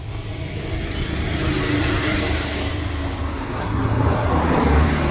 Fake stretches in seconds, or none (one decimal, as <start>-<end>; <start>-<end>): 3.6-4.3